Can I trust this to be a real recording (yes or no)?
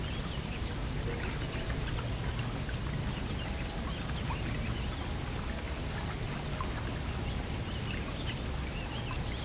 yes